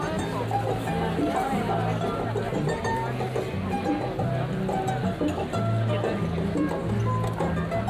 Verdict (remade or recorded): recorded